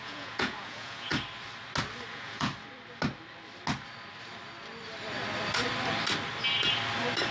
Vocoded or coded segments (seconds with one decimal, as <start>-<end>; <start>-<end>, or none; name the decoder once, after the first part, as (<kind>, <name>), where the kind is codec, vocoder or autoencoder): 0.0-1.1 (vocoder, Vocos); 2.1-2.5